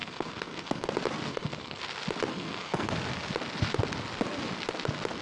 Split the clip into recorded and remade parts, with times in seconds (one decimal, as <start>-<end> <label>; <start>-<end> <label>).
0.0-0.9 remade; 0.9-1.3 recorded; 1.3-1.8 remade; 1.8-2.3 recorded; 2.3-2.9 remade; 2.9-5.2 recorded